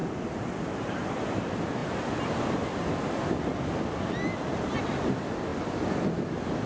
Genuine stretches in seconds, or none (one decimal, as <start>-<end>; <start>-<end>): 0.8-6.7